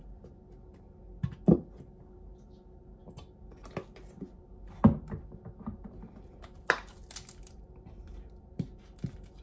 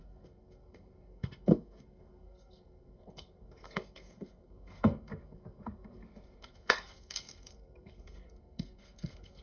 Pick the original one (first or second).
first